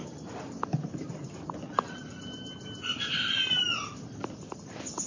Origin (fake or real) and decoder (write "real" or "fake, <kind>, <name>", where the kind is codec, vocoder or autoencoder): real